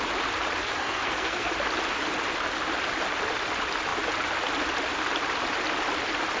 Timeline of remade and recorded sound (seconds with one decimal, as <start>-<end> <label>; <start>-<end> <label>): 0.0-0.8 recorded; 0.8-1.5 remade; 1.5-6.4 recorded